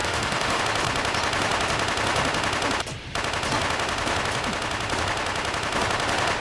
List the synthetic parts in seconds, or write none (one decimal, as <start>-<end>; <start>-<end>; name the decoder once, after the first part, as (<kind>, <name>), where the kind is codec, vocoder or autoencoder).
0.0-0.6 (autoencoder, DAC-VAE)